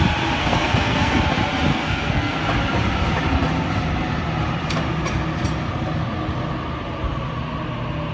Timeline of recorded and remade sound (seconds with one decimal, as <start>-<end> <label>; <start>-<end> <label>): 0.0-0.4 recorded; 0.4-1.2 remade; 1.2-1.7 recorded; 1.7-2.4 remade; 2.4-8.1 recorded